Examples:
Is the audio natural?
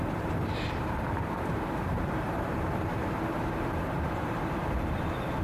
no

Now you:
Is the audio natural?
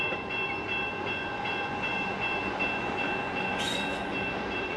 no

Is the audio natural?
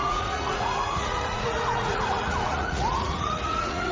no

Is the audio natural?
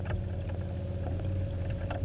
yes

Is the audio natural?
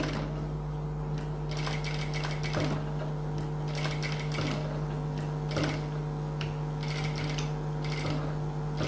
yes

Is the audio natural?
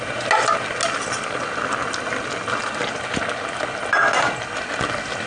yes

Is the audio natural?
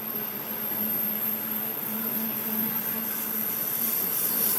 no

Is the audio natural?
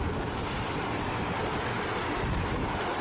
yes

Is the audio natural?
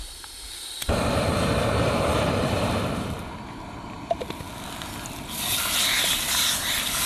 no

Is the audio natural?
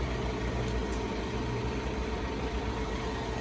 yes